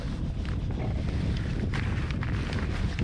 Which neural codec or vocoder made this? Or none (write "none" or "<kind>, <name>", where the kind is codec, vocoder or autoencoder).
none